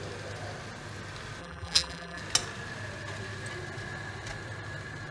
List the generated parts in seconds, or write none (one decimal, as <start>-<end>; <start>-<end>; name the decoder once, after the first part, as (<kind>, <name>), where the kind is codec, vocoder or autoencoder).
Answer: 1.4-2.2 (vocoder, BigVGAN v2)